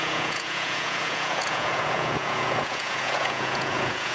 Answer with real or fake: fake